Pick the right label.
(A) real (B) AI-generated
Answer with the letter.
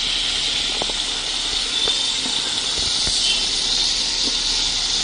A